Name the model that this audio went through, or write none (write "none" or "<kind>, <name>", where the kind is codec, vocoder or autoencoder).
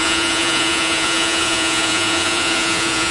vocoder, Vocos